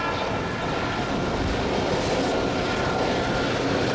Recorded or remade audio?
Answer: recorded